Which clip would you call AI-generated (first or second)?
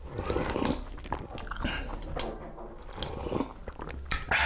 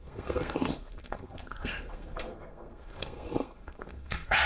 second